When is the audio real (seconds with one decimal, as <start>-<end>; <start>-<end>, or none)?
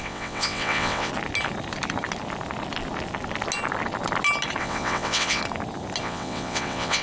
1.1-4.6; 5.4-6.0